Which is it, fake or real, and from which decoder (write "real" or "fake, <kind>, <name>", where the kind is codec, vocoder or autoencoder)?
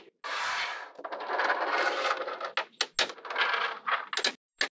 real